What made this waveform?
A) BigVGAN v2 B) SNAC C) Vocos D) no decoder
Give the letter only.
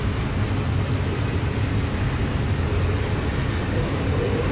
D